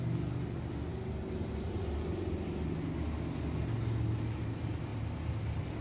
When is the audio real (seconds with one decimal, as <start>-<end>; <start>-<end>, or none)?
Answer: 0.0-5.8